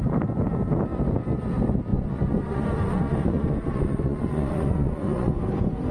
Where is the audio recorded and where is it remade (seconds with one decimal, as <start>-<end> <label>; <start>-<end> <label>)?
0.0-1.9 recorded; 1.9-5.4 remade; 5.4-5.9 recorded